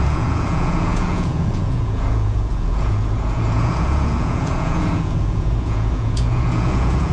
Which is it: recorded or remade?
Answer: remade